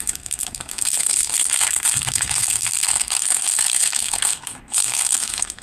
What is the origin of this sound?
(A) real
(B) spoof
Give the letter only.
B